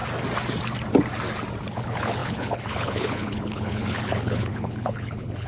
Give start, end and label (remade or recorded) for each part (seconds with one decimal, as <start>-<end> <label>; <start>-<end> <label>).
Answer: 0.0-1.7 recorded; 1.7-5.5 remade